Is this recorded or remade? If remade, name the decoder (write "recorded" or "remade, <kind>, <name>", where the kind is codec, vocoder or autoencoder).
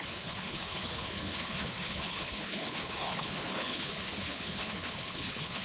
remade, codec, HILCodec